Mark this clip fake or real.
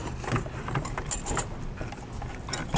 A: real